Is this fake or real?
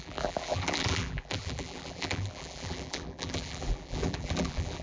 fake